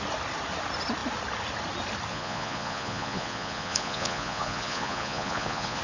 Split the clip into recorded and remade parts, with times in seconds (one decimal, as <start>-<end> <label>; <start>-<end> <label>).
0.0-2.1 recorded; 2.1-5.8 remade